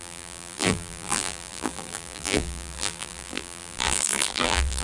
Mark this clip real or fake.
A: fake